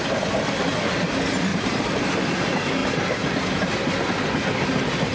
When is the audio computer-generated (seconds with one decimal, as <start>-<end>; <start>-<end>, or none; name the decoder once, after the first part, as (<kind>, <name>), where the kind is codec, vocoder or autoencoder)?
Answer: 1.5-2.1 (vocoder, BigVGAN v2)